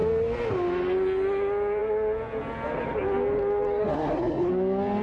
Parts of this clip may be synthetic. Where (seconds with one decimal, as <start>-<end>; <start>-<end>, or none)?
3.8-4.5